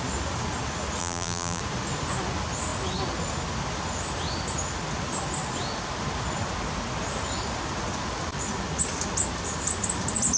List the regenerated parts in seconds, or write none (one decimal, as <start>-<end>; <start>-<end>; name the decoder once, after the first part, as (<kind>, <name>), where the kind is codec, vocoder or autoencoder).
1.0-1.6 (vocoder, BigVGAN v2)